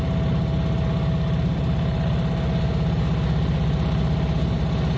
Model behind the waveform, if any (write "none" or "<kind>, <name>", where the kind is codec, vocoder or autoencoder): none